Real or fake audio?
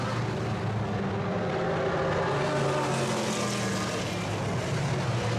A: real